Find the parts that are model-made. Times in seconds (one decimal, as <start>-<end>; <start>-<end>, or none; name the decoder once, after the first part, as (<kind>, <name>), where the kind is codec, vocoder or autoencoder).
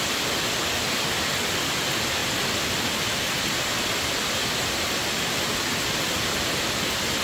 none